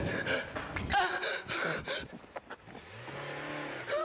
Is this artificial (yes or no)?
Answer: no